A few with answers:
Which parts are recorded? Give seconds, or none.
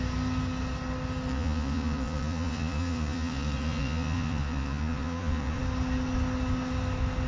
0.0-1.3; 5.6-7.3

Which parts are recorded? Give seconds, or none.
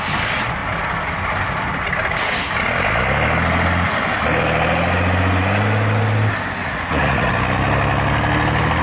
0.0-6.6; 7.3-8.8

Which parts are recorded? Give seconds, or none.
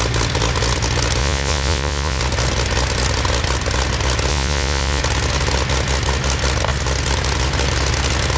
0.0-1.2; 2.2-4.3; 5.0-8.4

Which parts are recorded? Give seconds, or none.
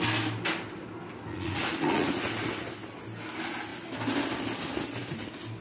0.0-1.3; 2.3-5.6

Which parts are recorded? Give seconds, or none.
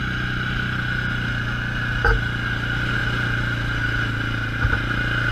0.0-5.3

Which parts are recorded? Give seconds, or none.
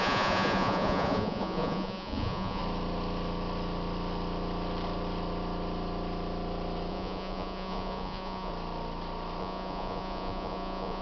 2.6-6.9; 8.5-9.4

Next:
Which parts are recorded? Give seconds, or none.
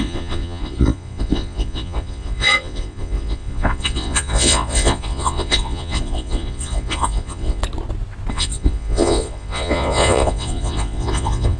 7.6-8.3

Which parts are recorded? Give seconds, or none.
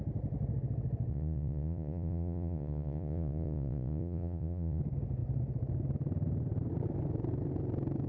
0.0-1.1; 4.8-8.1